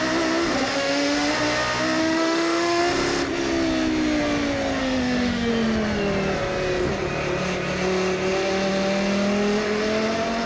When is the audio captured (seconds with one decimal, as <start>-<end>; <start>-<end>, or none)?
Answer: 0.0-0.7; 1.3-2.0; 2.8-4.8; 5.5-10.5